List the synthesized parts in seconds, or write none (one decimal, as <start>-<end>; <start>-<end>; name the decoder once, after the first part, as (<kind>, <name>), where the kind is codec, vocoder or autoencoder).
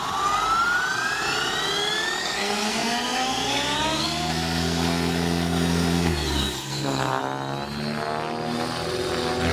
2.2-7.2 (codec, SNAC)